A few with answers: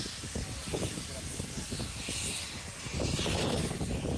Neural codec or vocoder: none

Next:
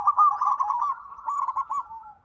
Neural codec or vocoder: none